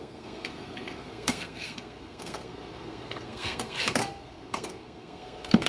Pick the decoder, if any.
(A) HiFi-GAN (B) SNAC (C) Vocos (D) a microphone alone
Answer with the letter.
B